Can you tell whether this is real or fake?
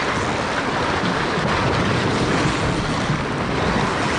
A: real